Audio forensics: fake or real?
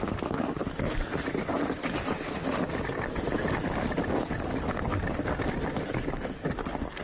real